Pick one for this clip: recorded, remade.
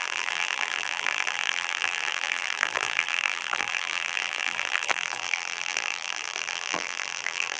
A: remade